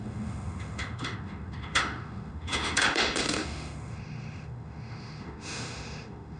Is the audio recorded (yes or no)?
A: no